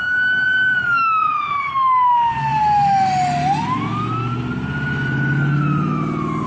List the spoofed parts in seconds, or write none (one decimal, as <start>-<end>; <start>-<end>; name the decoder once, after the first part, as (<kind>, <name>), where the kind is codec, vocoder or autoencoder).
1.2-1.7 (vocoder, Vocos)